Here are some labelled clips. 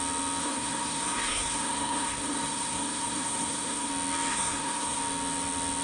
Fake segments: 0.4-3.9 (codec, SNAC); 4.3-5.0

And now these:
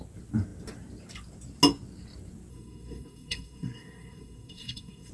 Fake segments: 2.5-5.1 (codec, SNAC)

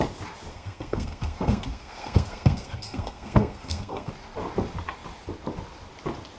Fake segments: 0.5-4.1 (codec, SNAC)